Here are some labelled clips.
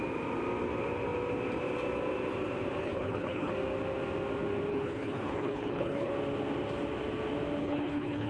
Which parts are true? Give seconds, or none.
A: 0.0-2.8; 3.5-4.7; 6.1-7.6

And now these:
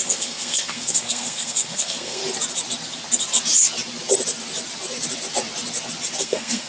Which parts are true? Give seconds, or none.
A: 2.2-6.2

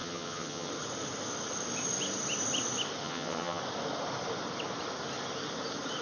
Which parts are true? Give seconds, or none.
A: 0.7-3.0; 3.6-6.0